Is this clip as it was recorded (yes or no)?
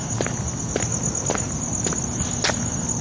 yes